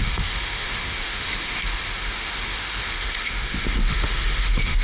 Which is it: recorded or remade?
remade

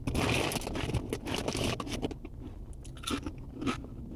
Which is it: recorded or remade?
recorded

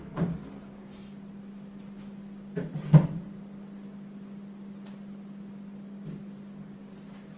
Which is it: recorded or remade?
recorded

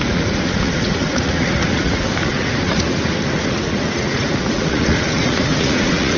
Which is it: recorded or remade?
remade